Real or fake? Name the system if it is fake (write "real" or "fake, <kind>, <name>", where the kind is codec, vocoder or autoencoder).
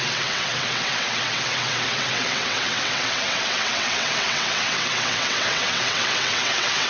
fake, vocoder, WaveNeXt